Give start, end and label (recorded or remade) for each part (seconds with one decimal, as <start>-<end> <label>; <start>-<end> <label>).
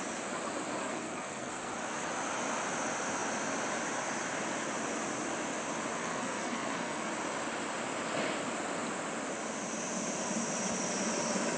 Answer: 0.0-0.8 recorded; 0.8-2.1 remade; 2.1-6.0 recorded; 6.0-7.1 remade; 7.1-11.6 recorded